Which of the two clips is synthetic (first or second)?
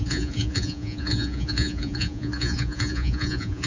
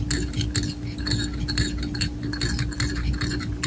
first